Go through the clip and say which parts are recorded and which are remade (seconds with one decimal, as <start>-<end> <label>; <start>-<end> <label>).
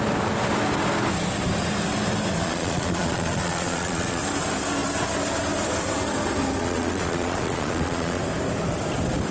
0.0-2.4 recorded; 2.4-4.2 remade; 4.2-6.6 recorded; 6.6-8.2 remade; 8.2-9.3 recorded